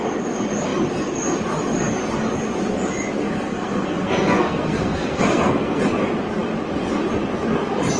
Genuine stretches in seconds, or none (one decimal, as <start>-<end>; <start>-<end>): 0.0-3.2; 5.8-8.0